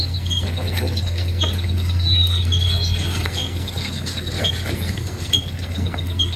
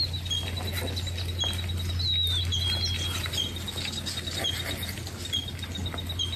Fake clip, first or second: first